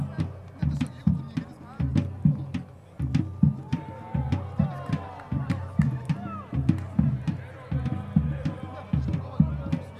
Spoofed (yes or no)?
no